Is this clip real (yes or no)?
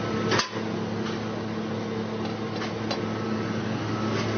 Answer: yes